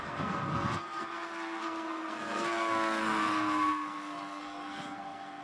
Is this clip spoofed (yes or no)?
yes